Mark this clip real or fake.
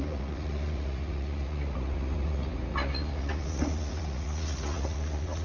fake